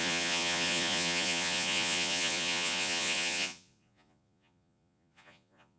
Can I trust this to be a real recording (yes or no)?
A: no